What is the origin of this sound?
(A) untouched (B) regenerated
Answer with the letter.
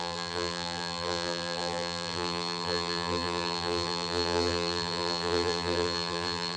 B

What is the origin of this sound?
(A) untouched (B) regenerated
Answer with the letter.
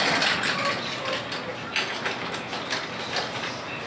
A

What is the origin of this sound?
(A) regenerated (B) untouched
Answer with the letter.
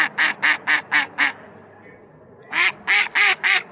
B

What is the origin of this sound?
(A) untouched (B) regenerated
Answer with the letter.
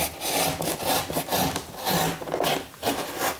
A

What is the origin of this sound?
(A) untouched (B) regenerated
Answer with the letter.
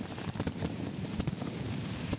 B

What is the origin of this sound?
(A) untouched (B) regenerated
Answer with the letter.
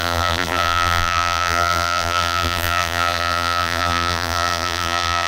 B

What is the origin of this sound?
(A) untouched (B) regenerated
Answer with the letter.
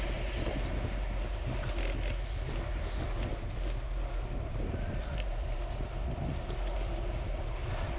A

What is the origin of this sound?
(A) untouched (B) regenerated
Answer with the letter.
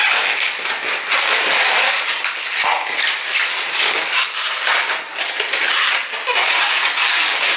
A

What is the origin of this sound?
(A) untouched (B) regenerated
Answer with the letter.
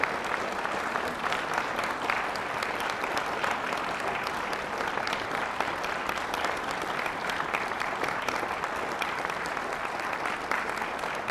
A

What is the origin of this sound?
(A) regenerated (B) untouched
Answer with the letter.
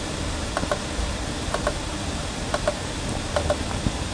A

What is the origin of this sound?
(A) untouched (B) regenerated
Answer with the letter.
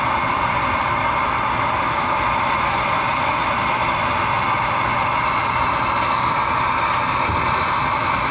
A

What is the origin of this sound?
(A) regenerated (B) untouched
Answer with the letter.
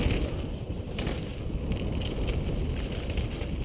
B